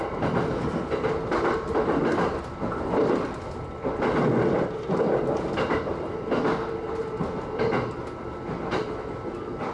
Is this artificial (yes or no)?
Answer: no